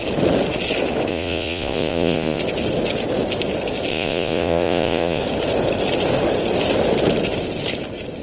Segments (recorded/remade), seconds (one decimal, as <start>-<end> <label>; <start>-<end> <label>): 0.0-1.1 recorded; 1.1-2.4 remade; 2.4-3.9 recorded; 3.9-5.2 remade; 5.2-8.2 recorded